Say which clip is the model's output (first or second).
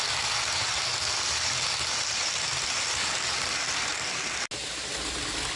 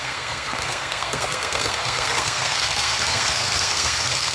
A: second